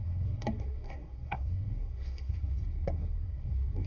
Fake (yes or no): yes